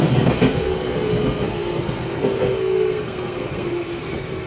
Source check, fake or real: fake